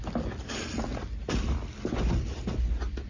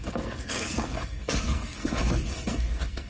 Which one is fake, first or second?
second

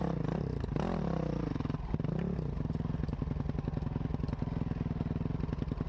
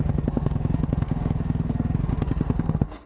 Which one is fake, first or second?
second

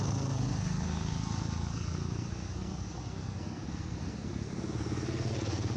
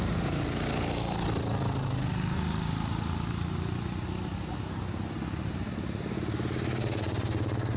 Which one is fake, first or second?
first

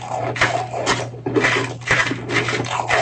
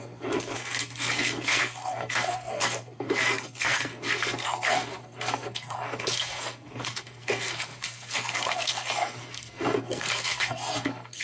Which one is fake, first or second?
second